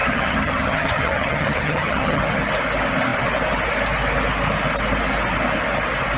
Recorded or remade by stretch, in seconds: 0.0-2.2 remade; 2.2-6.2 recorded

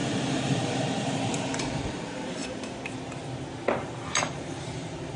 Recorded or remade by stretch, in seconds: 0.0-2.4 remade; 2.4-3.7 recorded; 3.7-5.2 remade

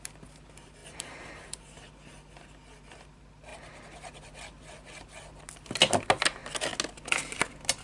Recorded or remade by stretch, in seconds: 0.0-0.8 recorded; 0.8-1.9 remade; 1.9-7.8 recorded